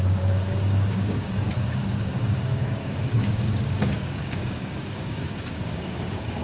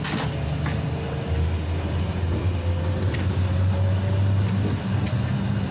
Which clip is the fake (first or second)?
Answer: first